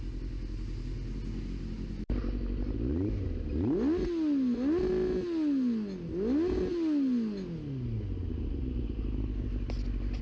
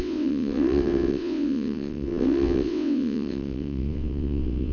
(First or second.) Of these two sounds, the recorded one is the first